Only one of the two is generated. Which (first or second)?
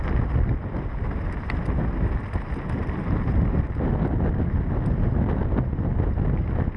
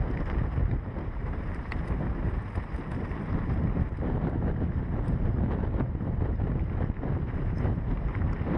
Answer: second